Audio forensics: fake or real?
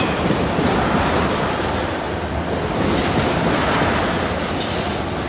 real